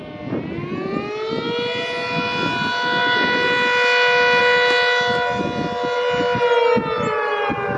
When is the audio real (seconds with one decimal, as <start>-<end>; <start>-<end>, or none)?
0.0-7.8

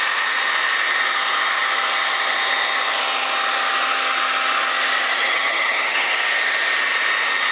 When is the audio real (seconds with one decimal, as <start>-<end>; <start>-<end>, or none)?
0.0-5.2; 6.1-7.5

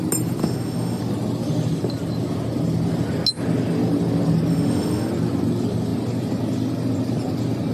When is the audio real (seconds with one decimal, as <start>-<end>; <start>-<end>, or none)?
0.0-0.4; 1.0-4.5; 5.1-7.7